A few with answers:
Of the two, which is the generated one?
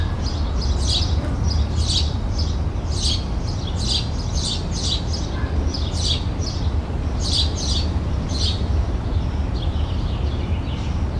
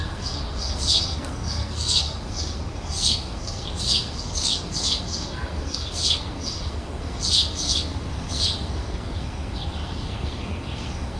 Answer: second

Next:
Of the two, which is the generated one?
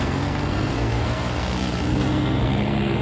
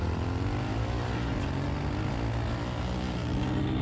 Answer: first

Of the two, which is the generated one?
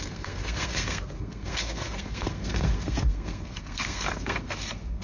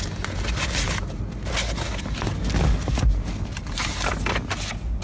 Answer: first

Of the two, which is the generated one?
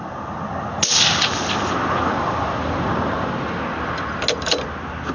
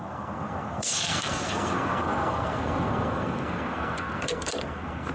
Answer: second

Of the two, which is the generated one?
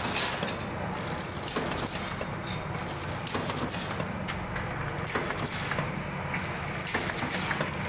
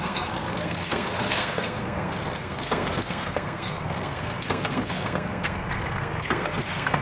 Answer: second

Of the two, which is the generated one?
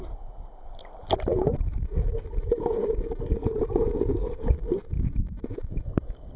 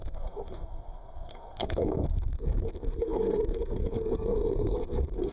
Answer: second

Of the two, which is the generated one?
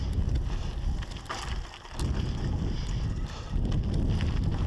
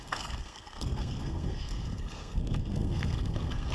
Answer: second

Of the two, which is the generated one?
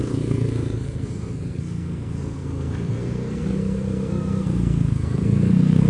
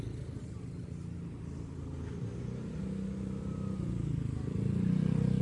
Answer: first